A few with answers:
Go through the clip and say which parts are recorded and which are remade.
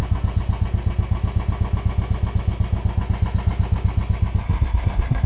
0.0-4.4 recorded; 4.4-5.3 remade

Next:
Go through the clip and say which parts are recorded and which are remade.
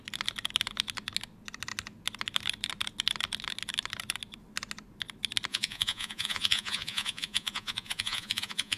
0.0-5.5 recorded; 5.5-8.8 remade